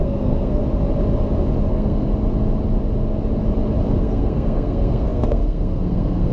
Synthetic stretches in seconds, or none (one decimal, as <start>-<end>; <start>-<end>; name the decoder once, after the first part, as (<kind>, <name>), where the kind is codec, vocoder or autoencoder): 0.0-0.6 (codec, SNAC); 1.7-2.1; 4.0-6.3